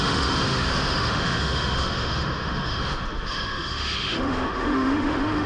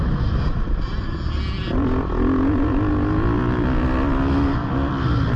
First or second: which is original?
second